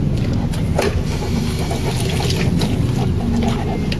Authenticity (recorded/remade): recorded